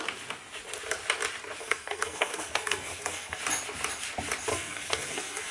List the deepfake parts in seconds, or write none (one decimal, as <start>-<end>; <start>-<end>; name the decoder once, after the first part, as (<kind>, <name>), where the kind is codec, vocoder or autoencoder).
1.6-3.4 (codec, SNAC); 4.5-5.5